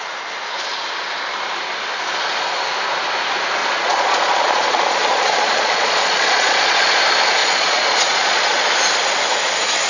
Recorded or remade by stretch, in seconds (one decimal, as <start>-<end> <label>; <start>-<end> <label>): 0.0-3.6 recorded; 3.6-7.0 remade; 7.0-7.4 recorded; 7.4-8.7 remade; 8.7-9.9 recorded